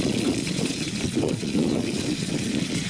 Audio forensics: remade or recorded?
remade